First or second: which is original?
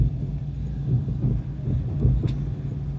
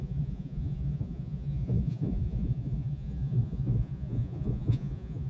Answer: first